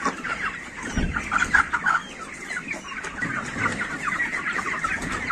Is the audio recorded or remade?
recorded